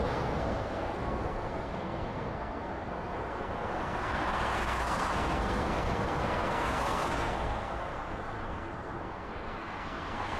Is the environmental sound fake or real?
fake